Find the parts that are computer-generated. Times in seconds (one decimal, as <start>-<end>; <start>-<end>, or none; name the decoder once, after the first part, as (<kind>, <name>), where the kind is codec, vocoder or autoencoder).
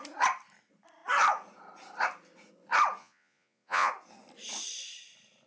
3.0-3.9 (vocoder, Vocos)